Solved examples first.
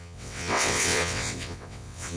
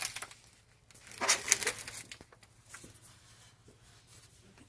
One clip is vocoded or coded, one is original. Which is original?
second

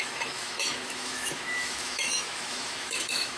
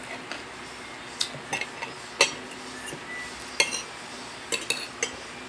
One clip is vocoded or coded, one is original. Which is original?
second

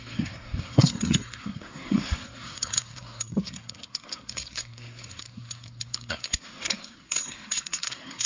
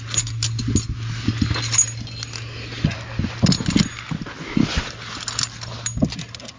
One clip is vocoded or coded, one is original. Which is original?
second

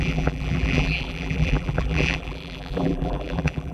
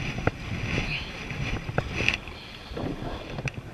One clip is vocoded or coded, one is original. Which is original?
second